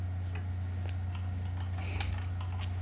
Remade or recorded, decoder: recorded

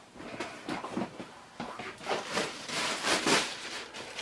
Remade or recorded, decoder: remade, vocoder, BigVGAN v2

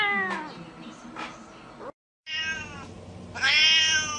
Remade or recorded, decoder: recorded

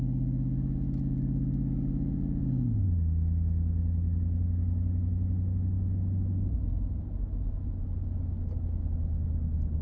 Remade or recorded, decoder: recorded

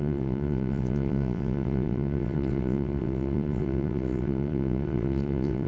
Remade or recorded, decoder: remade, vocoder, WaveNeXt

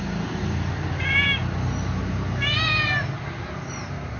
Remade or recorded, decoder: recorded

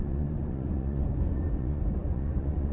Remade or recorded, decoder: remade, vocoder, Vocos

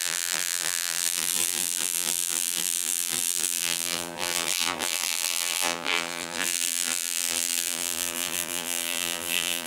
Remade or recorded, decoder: remade, vocoder, BigVGAN v2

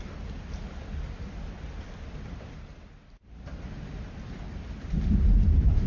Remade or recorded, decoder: recorded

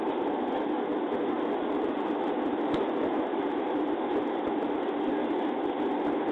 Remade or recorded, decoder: recorded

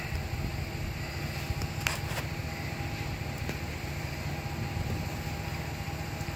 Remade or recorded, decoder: recorded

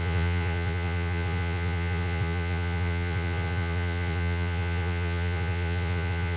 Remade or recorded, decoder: remade, vocoder, Vocos